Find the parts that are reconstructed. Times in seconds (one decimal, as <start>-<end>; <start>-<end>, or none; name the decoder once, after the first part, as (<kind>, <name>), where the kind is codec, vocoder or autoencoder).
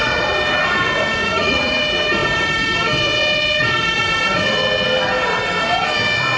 1.2-1.8 (vocoder, Vocos)